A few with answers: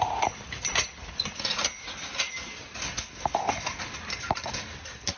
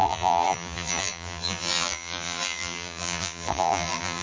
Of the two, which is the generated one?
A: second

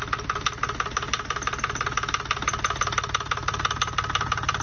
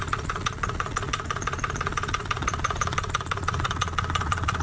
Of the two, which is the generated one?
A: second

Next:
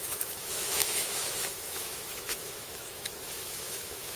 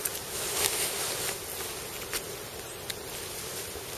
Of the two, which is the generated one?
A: first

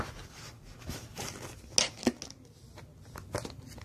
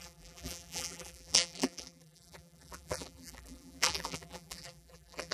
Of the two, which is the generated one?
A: second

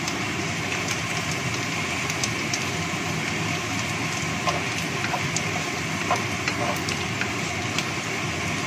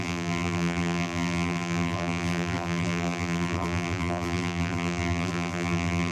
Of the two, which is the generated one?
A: second